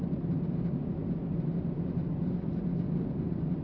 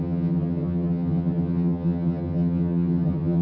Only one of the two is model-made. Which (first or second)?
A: second